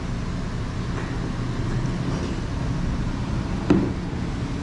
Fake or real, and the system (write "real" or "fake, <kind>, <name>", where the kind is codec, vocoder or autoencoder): real